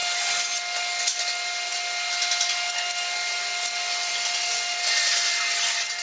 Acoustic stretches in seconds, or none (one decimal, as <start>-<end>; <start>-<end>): 0.0-6.0

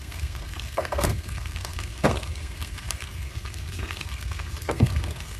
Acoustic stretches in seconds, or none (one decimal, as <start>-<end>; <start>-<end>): none

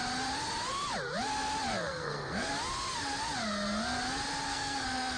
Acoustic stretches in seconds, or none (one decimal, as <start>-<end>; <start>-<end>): 0.0-1.7; 2.5-4.5

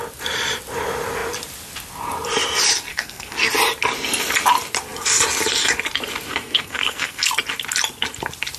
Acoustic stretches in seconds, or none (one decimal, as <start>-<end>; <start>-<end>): 0.0-2.9; 3.5-6.3; 7.3-8.6

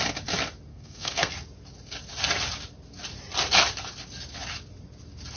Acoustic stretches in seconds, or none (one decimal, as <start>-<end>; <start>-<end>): 0.0-0.7; 1.3-5.4

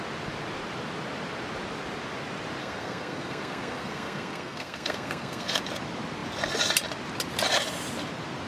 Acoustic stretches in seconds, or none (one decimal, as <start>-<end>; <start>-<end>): 0.0-2.6; 5.6-8.5

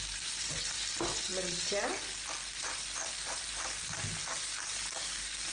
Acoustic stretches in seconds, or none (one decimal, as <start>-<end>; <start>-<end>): 0.0-5.5

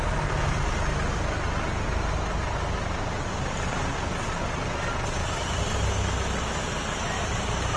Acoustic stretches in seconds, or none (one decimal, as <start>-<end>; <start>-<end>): 0.0-7.8